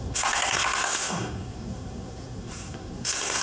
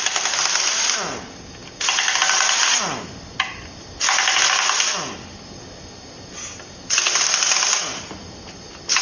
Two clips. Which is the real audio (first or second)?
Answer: second